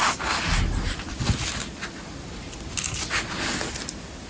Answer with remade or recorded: recorded